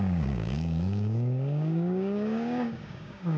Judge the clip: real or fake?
fake